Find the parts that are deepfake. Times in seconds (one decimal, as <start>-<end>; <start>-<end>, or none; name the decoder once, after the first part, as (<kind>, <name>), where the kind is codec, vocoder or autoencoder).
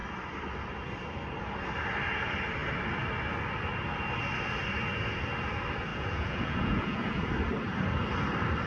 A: 5.9-7.3 (vocoder, Vocos)